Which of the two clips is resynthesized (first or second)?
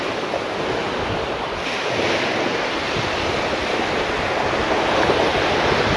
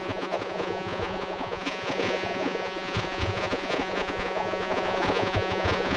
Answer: second